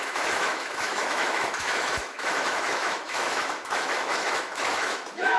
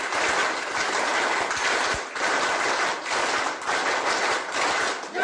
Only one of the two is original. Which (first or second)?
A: second